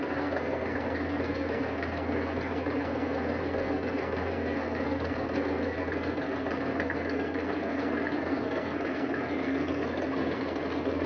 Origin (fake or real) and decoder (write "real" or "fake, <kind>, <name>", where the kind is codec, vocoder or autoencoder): fake, codec, SNAC